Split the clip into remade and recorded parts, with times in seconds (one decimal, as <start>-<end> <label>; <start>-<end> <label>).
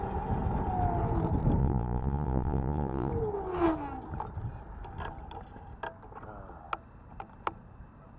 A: 0.0-1.6 recorded; 1.6-3.1 remade; 3.1-8.2 recorded